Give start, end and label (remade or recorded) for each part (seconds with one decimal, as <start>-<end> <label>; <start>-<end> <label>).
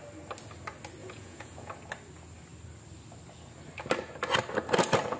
0.0-1.0 recorded; 1.0-1.7 remade; 1.7-5.2 recorded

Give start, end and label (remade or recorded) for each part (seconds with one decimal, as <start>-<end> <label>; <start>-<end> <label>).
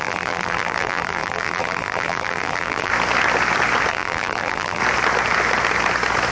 0.0-2.9 remade; 2.9-3.9 recorded; 3.9-4.8 remade; 4.8-6.3 recorded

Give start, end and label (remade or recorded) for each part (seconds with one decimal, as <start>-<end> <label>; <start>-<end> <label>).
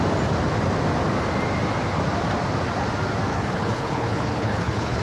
0.0-3.3 recorded; 3.3-5.0 remade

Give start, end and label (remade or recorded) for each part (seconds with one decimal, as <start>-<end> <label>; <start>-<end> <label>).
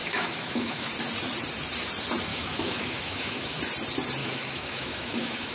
0.0-0.9 remade; 0.9-2.3 recorded; 2.3-3.6 remade; 3.6-4.2 recorded; 4.2-5.5 remade